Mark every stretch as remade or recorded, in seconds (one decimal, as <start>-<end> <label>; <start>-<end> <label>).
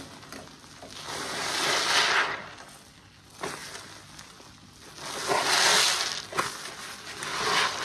0.0-7.8 recorded